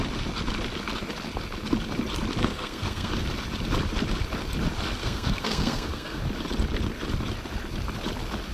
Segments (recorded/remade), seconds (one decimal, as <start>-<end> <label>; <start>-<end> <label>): 0.0-2.4 recorded; 2.4-3.1 remade; 3.1-5.0 recorded; 5.0-6.2 remade; 6.2-8.5 recorded

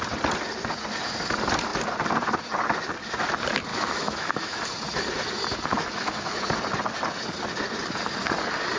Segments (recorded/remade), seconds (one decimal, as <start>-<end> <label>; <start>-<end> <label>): 0.0-3.7 recorded; 3.7-4.6 remade; 4.6-5.7 recorded; 5.7-6.4 remade; 6.4-8.8 recorded

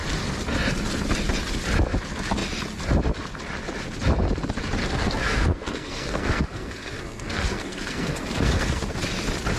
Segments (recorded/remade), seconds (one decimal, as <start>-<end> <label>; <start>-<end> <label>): 0.0-4.8 recorded; 4.8-9.0 remade; 9.0-9.6 recorded

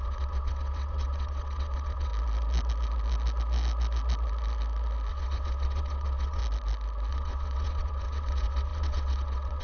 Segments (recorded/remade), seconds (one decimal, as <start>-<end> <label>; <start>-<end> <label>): 0.0-2.1 remade; 2.1-5.1 recorded; 5.1-6.4 remade; 6.4-7.1 recorded; 7.1-9.6 remade

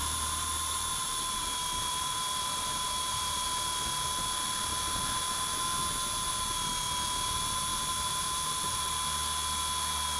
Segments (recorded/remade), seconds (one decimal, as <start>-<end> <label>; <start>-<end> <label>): 0.0-3.5 remade; 3.5-7.7 recorded; 7.7-8.9 remade; 8.9-10.2 recorded

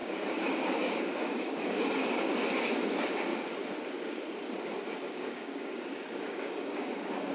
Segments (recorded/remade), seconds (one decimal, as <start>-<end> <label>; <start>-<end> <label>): 0.0-3.3 remade; 3.3-5.1 recorded; 5.1-7.3 remade